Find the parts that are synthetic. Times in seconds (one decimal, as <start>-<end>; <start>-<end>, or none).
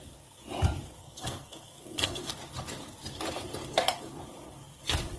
1.0-2.3